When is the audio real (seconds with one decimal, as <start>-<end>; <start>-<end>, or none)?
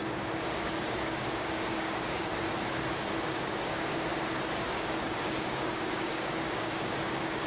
2.3-3.1; 4.1-4.7